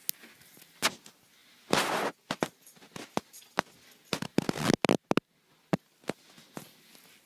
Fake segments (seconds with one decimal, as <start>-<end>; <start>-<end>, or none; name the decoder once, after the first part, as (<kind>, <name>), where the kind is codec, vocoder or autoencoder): none